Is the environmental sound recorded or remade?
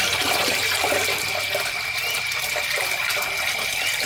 remade